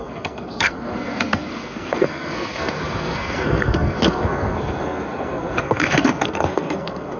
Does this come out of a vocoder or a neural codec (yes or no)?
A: yes